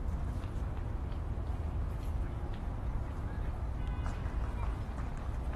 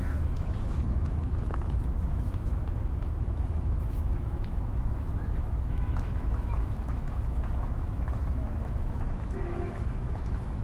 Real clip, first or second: first